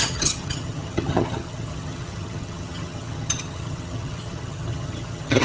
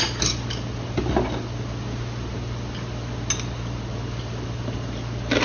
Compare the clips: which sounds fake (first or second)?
first